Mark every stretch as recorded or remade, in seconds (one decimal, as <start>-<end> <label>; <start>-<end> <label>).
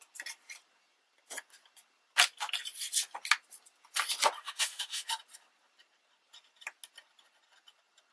0.0-4.4 recorded; 4.4-5.1 remade; 5.1-8.1 recorded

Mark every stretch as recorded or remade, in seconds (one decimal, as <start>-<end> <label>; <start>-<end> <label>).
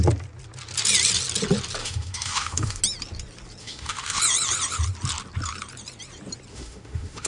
0.0-1.8 recorded; 1.8-2.8 remade; 2.8-3.6 recorded; 3.6-4.2 remade; 4.2-6.5 recorded; 6.5-7.3 remade